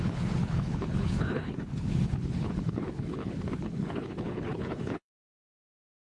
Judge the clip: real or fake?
fake